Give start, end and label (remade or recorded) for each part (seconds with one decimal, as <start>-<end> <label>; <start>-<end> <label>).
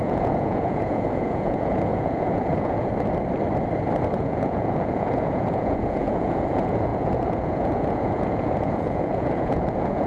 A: 0.0-2.9 remade; 2.9-4.1 recorded; 4.1-10.1 remade